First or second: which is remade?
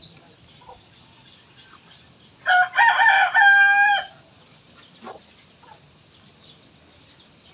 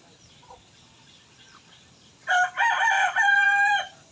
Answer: second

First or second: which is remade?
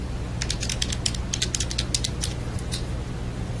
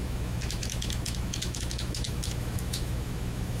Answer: second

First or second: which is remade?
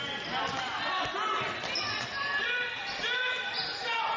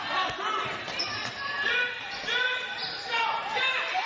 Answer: second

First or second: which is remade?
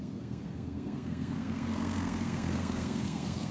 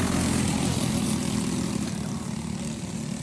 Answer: first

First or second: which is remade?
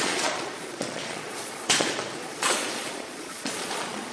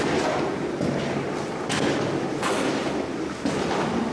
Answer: first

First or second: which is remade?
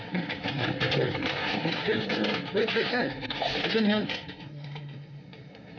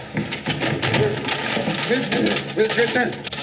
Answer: first